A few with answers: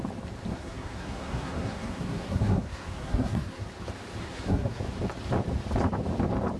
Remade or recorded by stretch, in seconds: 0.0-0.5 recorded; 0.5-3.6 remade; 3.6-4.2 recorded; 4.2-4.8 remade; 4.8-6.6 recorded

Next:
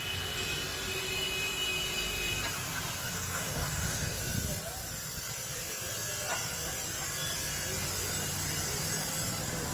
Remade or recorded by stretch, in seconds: 0.0-3.0 recorded; 3.0-4.2 remade; 4.2-9.7 recorded